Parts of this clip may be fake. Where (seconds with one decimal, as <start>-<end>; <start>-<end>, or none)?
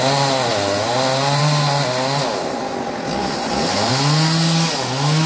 3.2-3.9